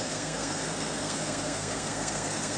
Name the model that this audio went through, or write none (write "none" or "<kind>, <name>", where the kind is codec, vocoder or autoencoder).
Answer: codec, SNAC